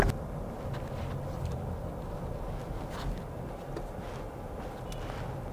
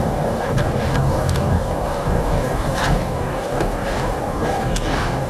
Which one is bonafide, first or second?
first